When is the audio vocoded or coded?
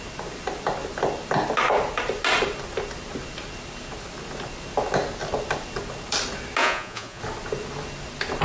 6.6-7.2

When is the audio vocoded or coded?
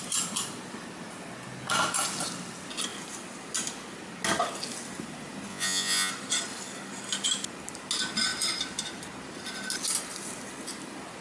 5.5-6.1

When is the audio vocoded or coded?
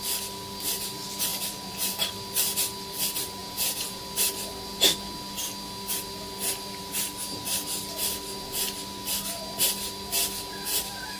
3.4-4.0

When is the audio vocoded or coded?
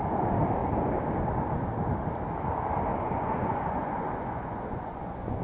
2.9-5.4